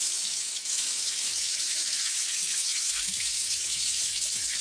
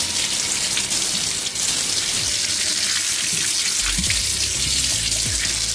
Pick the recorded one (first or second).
second